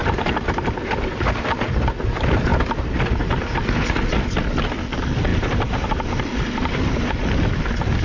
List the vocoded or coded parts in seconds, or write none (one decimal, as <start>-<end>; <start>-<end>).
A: 0.0-1.2; 2.5-3.4; 5.3-5.9